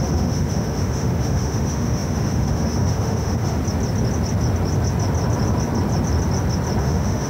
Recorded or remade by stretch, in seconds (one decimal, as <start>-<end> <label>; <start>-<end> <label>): 0.0-3.6 remade; 3.6-6.8 recorded; 6.8-7.3 remade